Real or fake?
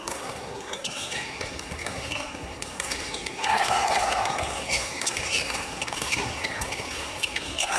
fake